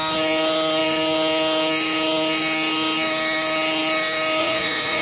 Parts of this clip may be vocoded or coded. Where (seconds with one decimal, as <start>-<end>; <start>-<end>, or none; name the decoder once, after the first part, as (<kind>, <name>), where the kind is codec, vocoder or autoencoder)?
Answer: 4.4-5.0 (vocoder, Vocos)